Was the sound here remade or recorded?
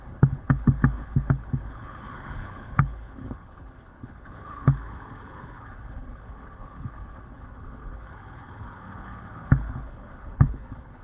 remade